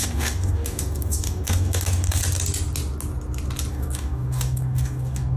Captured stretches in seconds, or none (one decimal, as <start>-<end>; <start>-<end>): 2.2-3.7